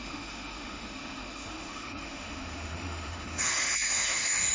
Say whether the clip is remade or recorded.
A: remade